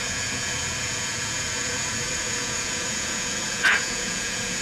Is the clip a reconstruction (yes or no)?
yes